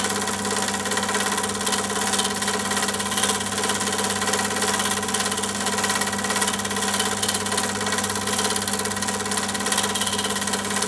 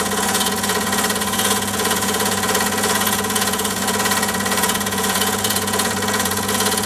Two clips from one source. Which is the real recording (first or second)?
first